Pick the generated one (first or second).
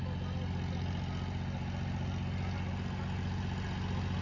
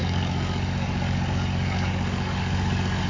second